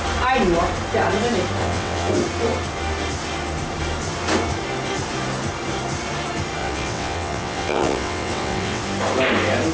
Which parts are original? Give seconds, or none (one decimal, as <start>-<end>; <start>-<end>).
0.0-1.6; 2.1-6.6; 8.8-9.7